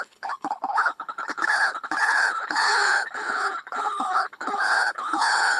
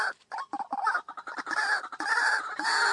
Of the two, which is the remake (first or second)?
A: first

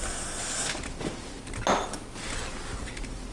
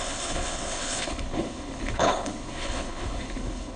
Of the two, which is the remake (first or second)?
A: second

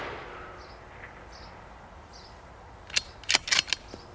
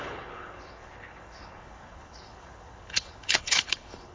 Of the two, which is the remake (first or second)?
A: second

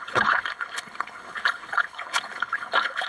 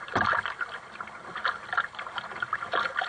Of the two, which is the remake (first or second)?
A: first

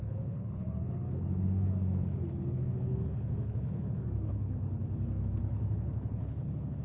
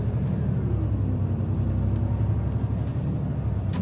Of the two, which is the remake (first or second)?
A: first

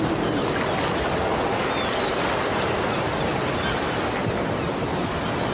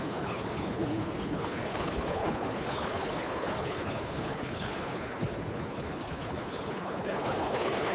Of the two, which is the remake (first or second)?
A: second